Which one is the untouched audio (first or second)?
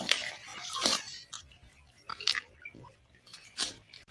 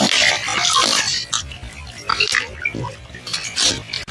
second